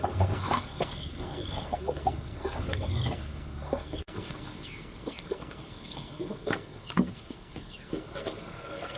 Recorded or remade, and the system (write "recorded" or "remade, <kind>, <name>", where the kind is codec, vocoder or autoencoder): remade, codec, SNAC